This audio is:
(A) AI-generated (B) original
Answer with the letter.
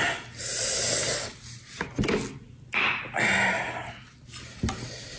B